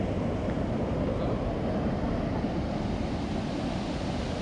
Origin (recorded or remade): recorded